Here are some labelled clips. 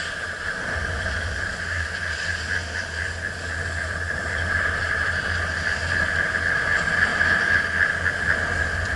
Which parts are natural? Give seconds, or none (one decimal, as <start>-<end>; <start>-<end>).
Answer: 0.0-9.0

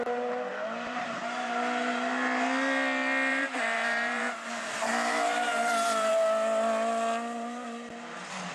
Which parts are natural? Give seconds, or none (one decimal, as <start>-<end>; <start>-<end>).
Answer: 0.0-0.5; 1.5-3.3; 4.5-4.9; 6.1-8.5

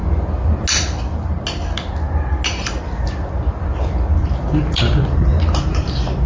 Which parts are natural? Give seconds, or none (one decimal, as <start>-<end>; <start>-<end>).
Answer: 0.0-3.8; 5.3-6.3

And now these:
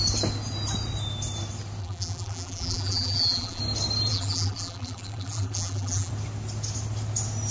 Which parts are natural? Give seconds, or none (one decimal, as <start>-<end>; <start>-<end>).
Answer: 0.0-1.8; 3.6-4.1; 6.1-7.5

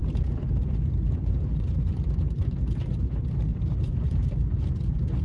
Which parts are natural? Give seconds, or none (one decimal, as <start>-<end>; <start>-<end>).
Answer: 3.1-3.5; 4.4-5.2

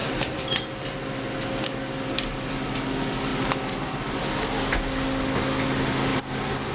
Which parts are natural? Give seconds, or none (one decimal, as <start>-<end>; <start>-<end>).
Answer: 0.6-6.1

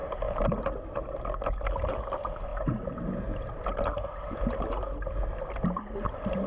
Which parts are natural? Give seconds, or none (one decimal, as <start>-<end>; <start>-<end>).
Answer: 0.6-6.5

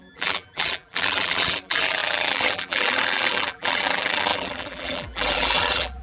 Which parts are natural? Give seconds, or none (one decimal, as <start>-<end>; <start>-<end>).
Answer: none